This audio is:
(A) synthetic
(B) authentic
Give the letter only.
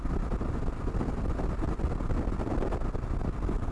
B